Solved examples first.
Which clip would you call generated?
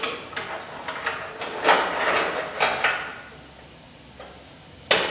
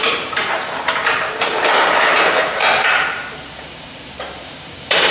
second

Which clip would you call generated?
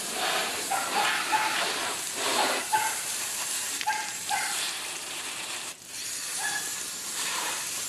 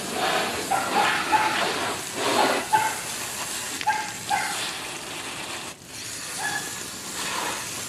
first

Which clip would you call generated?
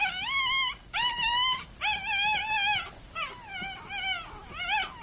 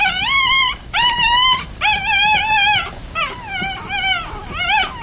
second